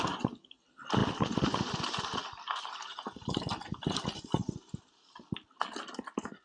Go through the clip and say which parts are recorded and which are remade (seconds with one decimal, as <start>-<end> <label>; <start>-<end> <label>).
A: 0.0-6.4 recorded